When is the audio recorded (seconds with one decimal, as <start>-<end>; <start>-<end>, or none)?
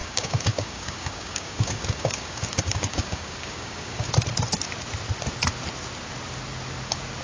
4.1-7.2